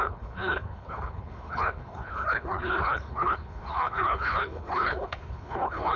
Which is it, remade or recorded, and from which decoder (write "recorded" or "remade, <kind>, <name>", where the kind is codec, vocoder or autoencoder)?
remade, codec, HILCodec